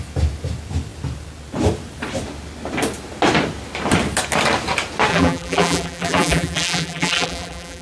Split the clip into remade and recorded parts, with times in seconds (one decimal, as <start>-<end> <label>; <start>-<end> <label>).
0.0-5.1 recorded; 5.1-7.8 remade